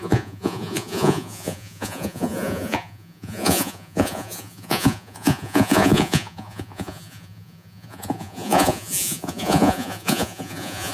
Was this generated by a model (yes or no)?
yes